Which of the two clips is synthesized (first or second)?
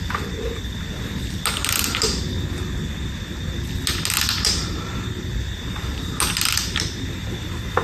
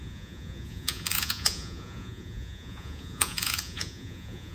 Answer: second